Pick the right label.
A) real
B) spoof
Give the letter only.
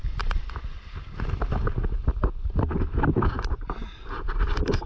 A